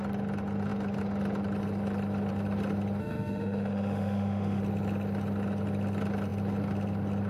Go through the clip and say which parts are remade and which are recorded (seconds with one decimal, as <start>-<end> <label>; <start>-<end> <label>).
0.0-3.0 recorded; 3.0-4.6 remade; 4.6-7.3 recorded